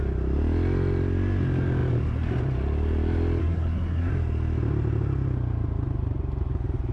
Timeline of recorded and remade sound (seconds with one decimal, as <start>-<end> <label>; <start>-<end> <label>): 0.0-3.4 recorded; 3.4-4.1 remade; 4.1-6.9 recorded